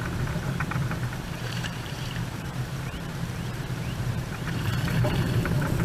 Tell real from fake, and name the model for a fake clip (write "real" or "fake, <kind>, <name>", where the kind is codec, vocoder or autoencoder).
fake, vocoder, BigVGAN v2